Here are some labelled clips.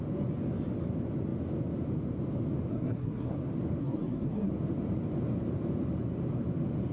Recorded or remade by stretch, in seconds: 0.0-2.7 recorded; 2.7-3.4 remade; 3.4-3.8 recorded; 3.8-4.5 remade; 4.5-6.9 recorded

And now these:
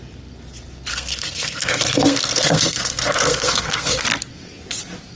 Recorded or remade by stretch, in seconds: 0.0-0.9 recorded; 0.9-4.0 remade; 4.0-5.2 recorded

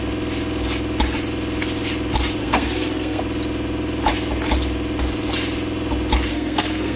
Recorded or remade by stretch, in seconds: 0.0-2.4 recorded; 2.4-3.2 remade; 3.2-6.3 recorded; 6.3-7.0 remade

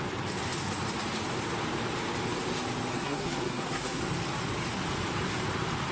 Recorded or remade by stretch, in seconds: 0.0-2.9 recorded; 2.9-4.0 remade; 4.0-5.9 recorded